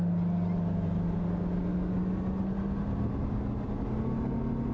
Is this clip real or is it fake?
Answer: real